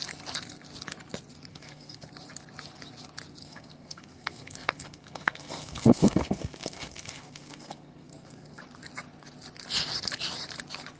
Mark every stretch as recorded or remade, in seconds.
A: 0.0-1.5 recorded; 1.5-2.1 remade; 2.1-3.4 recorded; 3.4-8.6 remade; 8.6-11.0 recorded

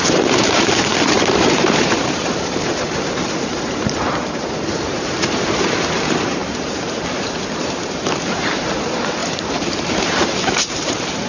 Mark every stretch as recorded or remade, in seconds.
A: 0.0-11.3 remade

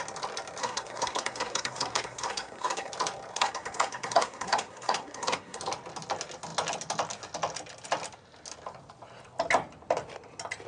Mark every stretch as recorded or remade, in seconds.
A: 0.0-0.6 recorded; 0.6-2.9 remade; 2.9-3.3 recorded; 3.3-5.6 remade; 5.6-10.7 recorded

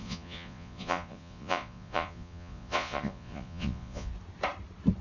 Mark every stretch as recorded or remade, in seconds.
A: 0.0-4.1 remade; 4.1-5.0 recorded

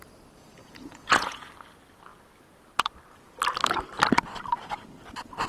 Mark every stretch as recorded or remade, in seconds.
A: 0.0-0.6 recorded; 0.6-1.5 remade; 1.5-5.5 recorded

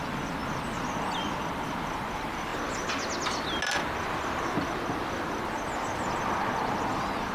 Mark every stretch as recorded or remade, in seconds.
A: 0.0-7.3 recorded